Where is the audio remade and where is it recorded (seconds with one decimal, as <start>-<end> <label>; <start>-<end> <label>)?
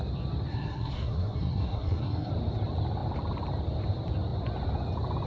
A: 0.0-0.5 recorded; 0.5-2.3 remade; 2.3-5.3 recorded